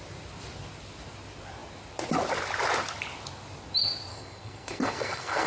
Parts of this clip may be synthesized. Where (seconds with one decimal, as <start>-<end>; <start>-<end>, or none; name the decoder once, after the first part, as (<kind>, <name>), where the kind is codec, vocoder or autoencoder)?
4.1-5.5 (codec, SNAC)